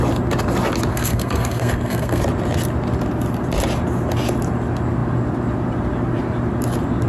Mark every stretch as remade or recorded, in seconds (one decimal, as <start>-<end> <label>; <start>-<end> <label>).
0.0-0.9 recorded; 0.9-2.2 remade; 2.2-7.1 recorded